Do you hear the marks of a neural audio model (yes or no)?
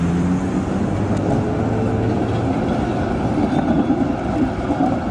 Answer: no